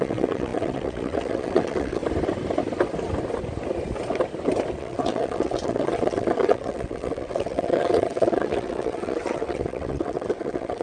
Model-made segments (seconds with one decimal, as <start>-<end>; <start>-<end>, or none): 0.0-2.0; 4.8-10.8